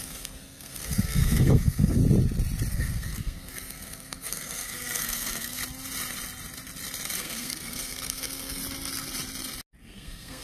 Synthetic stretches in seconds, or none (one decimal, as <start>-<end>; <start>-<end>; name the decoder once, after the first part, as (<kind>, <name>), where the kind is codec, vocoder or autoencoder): 0.0-2.0 (codec, SNAC); 2.7-5.6; 7.2-8.6; 9.8-10.4